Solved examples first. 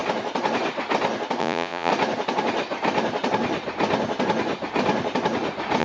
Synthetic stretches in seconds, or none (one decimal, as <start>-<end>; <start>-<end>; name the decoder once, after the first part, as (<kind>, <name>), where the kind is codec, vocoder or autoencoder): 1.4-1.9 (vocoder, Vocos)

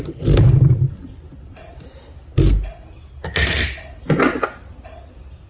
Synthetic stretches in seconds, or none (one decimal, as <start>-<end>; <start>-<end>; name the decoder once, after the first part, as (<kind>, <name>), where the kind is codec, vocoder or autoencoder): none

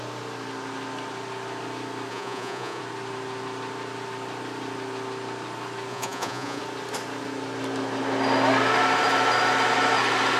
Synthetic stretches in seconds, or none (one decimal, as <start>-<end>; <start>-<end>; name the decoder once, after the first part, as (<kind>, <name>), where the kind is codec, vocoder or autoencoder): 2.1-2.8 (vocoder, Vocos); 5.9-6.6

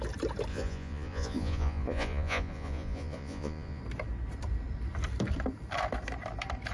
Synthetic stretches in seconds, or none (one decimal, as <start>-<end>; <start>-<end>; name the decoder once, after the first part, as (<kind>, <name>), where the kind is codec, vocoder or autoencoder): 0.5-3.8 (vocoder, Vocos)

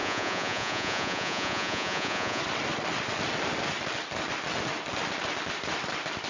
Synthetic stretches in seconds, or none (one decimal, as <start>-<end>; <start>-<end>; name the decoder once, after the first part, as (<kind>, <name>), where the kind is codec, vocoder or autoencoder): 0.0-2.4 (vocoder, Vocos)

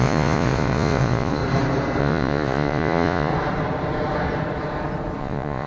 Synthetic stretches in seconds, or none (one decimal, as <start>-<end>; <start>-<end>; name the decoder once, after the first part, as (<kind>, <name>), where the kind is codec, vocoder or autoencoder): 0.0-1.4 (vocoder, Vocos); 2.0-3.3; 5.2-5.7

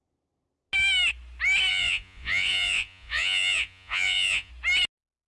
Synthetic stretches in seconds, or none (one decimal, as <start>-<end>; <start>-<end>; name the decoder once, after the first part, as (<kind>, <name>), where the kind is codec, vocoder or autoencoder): 1.7-4.5 (vocoder, Vocos)

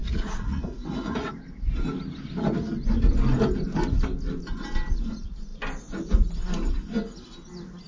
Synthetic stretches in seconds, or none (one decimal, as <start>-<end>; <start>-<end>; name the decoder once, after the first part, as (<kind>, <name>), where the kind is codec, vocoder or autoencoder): 0.0-1.3 (vocoder, Vocos)